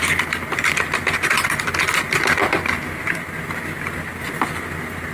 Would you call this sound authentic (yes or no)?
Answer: yes